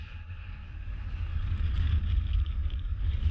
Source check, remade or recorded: remade